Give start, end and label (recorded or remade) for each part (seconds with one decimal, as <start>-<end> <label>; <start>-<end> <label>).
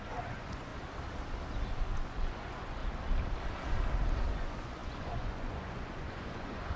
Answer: 0.0-0.7 remade; 0.7-1.7 recorded; 1.7-2.8 remade; 2.8-4.3 recorded; 4.3-6.8 remade